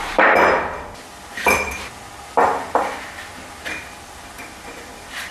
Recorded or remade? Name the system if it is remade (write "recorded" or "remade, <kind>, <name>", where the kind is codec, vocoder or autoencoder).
recorded